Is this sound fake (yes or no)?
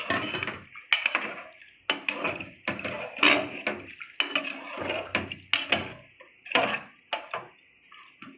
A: no